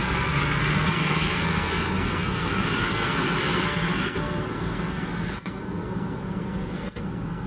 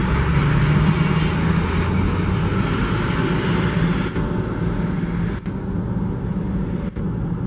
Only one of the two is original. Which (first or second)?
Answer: second